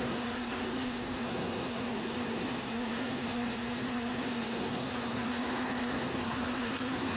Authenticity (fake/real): fake